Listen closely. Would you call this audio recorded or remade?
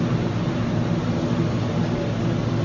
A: recorded